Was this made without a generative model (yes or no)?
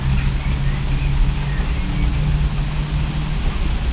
yes